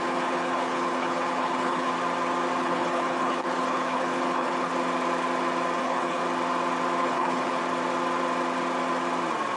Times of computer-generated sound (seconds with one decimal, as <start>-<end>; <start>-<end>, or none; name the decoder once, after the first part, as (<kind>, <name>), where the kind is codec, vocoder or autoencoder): 0.0-1.9 (codec, HILCodec); 2.6-4.7; 5.8-6.2; 7.0-7.6